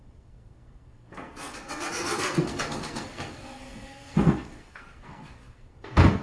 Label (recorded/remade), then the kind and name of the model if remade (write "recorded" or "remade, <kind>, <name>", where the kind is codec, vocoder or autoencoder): remade, codec, SNAC